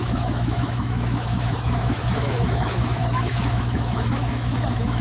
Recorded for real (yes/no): no